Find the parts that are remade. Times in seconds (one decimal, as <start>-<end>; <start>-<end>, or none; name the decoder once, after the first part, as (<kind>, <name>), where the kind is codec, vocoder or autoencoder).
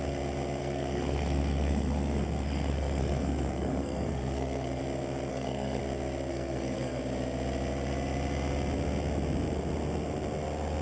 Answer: 0.6-4.8 (codec, SNAC); 5.3-5.8; 6.3-7.0